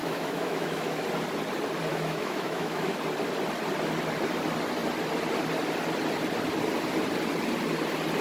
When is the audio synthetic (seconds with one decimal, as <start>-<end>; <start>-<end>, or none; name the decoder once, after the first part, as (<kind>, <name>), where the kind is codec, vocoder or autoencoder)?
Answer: 0.0-1.0 (autoencoder, DAC-VAE); 1.9-3.0